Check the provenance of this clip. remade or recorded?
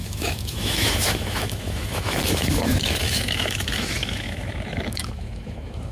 remade